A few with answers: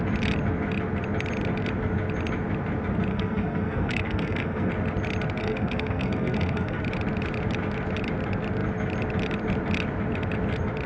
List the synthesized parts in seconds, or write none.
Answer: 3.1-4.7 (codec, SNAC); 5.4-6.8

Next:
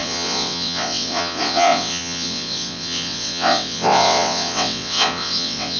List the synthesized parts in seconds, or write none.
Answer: 0.0-5.8 (vocoder, WaveNeXt)

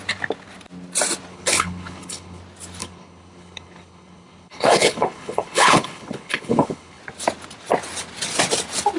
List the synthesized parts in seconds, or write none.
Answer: 1.3-2.4 (codec, HILCodec); 2.8-7.0

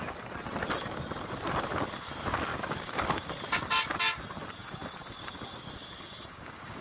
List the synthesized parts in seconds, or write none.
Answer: 2.5-3.3 (codec, DAC); 4.6-6.8

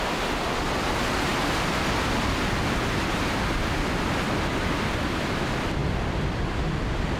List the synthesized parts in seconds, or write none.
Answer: none

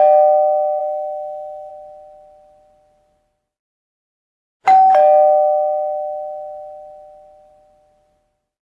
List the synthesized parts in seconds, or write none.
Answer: 0.8-1.7 (autoencoder, DAC-VAE)